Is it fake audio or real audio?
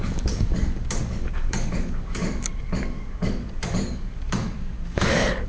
fake